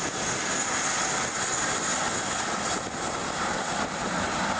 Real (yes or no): yes